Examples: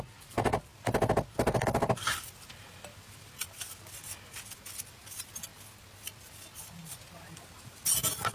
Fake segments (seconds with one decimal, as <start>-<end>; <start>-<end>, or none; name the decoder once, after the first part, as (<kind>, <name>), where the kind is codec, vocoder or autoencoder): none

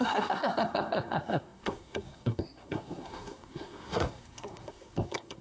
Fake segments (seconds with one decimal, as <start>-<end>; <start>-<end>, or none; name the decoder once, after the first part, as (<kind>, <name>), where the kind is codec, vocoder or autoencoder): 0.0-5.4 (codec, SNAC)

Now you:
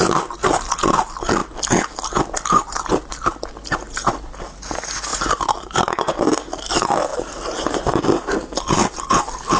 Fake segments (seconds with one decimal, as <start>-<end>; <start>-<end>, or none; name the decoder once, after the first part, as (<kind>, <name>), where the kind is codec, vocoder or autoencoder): 5.1-5.9 (vocoder, BigVGAN v2); 7.1-8.3

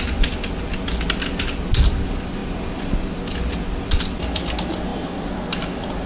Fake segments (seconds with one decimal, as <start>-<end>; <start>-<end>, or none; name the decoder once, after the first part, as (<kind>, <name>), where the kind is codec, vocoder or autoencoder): none

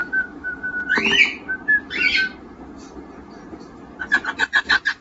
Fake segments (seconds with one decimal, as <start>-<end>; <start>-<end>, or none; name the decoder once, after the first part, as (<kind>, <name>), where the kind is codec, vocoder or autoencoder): 0.0-0.8 (autoencoder, DAC-VAE)